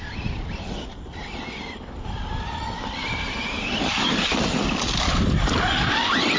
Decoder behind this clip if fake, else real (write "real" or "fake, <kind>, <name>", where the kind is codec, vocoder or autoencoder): real